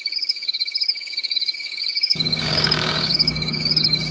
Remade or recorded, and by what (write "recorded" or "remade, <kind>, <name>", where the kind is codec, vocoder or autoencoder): remade, codec, DAC